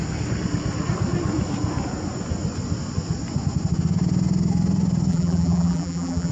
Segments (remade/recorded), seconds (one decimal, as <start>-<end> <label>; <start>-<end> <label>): 0.0-5.1 recorded; 5.1-6.3 remade